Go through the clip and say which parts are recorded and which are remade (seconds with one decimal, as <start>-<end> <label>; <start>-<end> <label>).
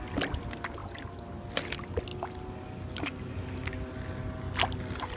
0.0-5.2 recorded